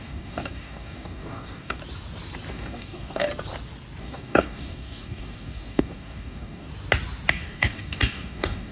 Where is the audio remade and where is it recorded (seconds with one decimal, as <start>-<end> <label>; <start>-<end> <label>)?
0.0-1.8 remade; 1.8-2.5 recorded; 2.5-3.3 remade; 3.3-4.0 recorded; 4.0-6.7 remade; 6.7-7.3 recorded; 7.3-8.7 remade